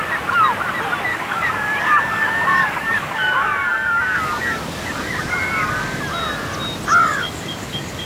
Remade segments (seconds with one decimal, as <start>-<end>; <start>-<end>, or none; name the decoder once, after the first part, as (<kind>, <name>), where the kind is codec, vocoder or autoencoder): 1.1-6.0 (codec, DAC); 7.0-8.1